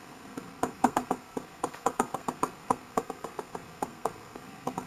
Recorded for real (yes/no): no